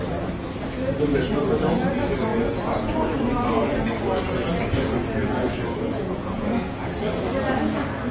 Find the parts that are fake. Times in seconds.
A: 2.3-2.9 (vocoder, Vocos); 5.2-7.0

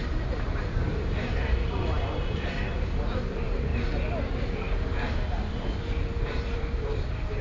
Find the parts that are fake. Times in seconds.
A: 0.0-3.7 (vocoder, BigVGAN v2); 4.3-7.4

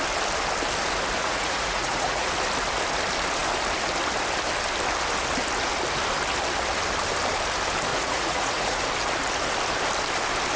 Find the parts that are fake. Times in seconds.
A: 1.2-2.3 (vocoder, Vocos); 7.9-8.8

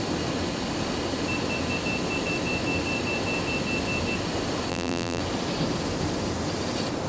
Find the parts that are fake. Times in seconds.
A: 4.7-5.2 (vocoder, BigVGAN v2)

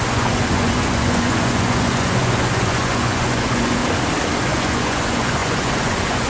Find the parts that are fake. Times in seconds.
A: 0.0-3.8 (vocoder, Vocos); 4.4-6.3